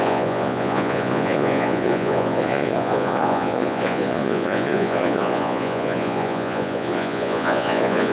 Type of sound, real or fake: fake